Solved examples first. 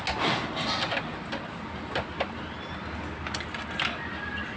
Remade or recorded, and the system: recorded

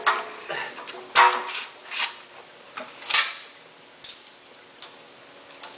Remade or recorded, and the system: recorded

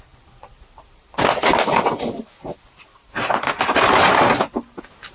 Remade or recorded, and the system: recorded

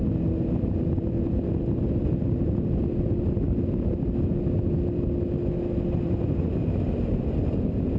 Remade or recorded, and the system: recorded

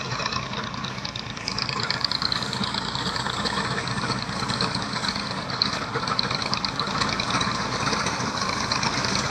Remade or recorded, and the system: remade, codec, DAC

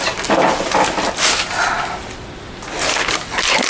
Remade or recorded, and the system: recorded